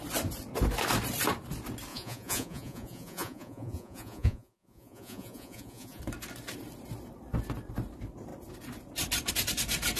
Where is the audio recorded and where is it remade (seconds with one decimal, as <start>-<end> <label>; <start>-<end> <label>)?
0.0-1.9 recorded; 1.9-6.0 remade; 6.0-10.0 recorded